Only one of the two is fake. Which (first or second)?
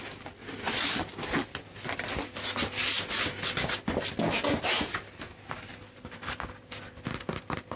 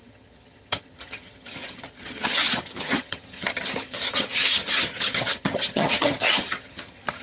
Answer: second